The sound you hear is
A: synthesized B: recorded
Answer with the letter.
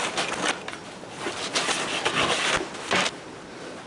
B